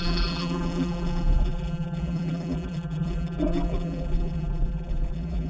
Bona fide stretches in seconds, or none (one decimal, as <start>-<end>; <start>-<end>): none